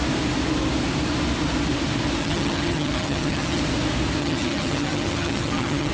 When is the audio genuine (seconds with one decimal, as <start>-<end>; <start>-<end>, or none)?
0.0-2.2; 3.6-4.2